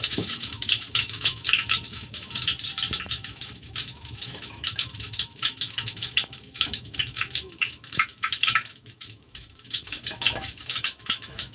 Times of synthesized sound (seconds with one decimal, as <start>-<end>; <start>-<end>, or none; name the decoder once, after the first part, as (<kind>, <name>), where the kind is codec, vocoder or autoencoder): 0.0-2.5 (autoencoder, DAC-VAE); 3.0-11.5